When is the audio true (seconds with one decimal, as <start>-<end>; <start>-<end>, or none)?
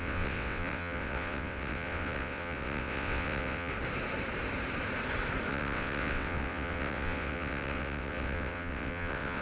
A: 3.7-5.5